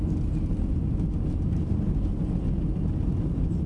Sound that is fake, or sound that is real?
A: real